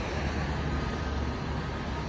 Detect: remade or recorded recorded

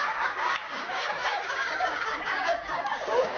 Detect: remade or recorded remade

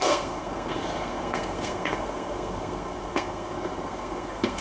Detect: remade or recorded remade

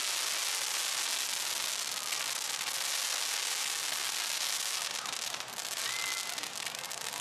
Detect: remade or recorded recorded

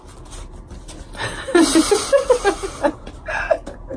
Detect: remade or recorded recorded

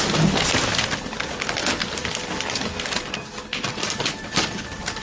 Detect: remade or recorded recorded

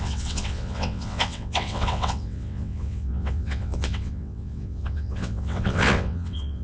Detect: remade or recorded remade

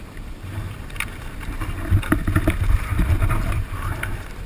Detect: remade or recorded remade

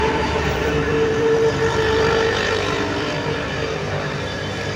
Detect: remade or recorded remade